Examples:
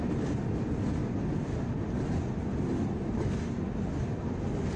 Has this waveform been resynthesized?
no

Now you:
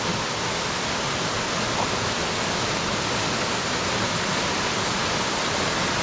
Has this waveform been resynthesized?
no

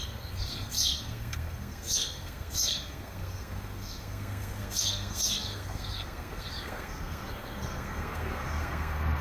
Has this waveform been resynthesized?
yes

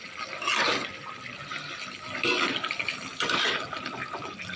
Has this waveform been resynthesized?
no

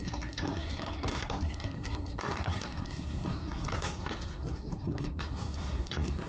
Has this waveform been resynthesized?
yes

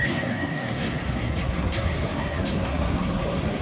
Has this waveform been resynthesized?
yes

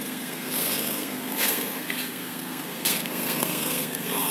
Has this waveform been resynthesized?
yes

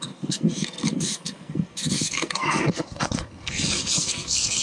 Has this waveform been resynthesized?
yes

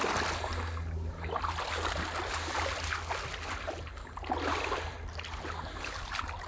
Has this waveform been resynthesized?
no